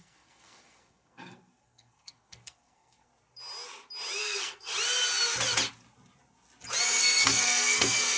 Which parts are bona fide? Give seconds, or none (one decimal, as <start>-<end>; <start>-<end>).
3.1-4.2; 4.7-7.0